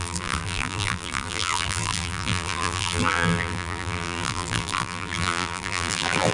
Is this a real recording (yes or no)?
no